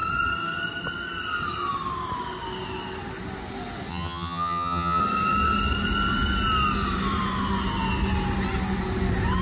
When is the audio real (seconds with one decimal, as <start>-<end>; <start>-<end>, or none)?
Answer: 0.0-3.9; 5.0-9.4